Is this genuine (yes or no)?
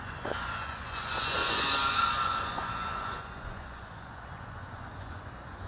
no